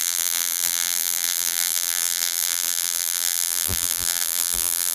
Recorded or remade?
remade